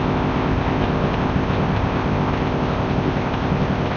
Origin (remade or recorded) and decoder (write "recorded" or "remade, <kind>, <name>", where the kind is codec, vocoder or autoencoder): remade, codec, ZipCodec